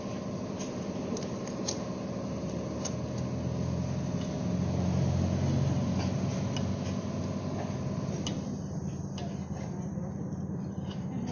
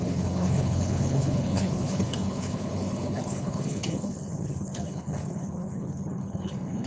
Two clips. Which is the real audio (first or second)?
first